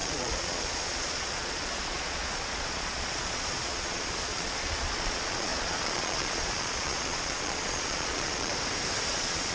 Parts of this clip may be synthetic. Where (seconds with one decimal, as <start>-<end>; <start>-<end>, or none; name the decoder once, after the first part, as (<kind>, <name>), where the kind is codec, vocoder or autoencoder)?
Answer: 0.0-8.5 (vocoder, Vocos); 9.1-9.5